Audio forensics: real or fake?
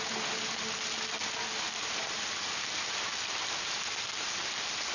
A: real